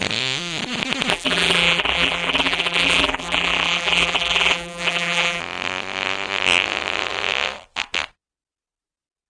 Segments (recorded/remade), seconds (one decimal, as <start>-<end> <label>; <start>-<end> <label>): 0.0-1.1 recorded; 1.1-5.4 remade; 5.4-9.3 recorded